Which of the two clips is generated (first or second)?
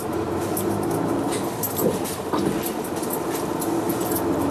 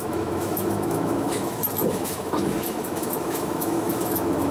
second